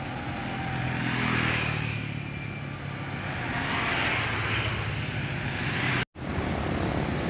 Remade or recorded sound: recorded